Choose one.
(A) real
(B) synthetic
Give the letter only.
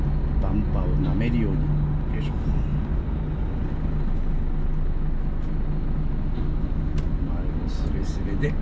A